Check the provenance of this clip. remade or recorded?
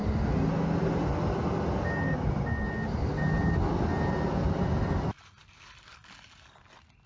recorded